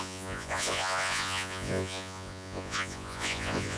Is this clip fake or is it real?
fake